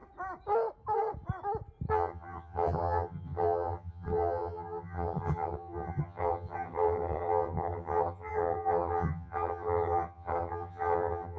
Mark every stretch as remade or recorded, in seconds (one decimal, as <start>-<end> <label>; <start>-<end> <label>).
0.0-1.9 recorded; 1.9-11.4 remade